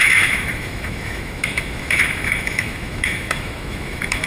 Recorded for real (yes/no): no